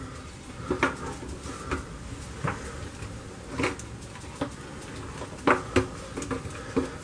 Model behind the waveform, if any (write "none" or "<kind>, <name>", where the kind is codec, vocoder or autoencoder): none